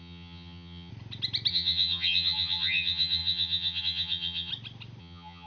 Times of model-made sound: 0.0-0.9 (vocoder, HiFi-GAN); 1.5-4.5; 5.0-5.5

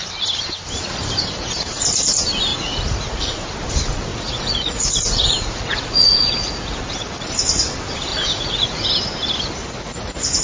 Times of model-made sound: 2.5-3.2 (vocoder, Vocos); 4.1-6.8; 8.1-8.9; 9.6-10.4

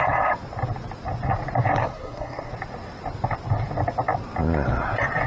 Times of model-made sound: 1.8-2.5 (codec, SNAC)

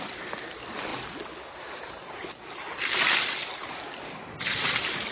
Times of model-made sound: none